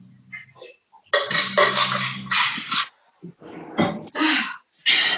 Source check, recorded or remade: recorded